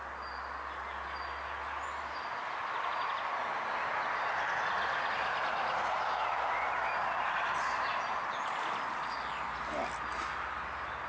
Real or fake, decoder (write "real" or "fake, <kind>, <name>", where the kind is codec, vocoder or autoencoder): real